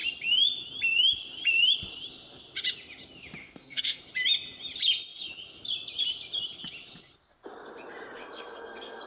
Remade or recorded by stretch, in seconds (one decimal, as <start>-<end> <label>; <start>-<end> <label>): 0.0-3.4 recorded; 3.4-4.0 remade; 4.0-8.2 recorded; 8.2-9.1 remade